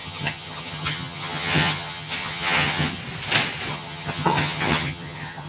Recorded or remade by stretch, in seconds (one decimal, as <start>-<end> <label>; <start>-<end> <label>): 0.0-3.0 remade; 3.0-3.7 recorded; 3.7-5.5 remade